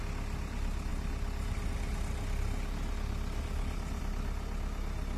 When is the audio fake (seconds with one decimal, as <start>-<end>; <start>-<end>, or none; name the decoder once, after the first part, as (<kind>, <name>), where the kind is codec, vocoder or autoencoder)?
none